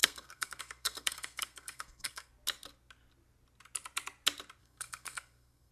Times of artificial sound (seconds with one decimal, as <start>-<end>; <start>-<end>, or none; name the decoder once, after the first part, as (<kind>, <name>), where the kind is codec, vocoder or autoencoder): 0.0-2.3 (codec, SNAC); 4.6-5.7